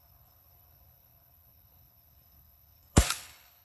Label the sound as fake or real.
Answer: fake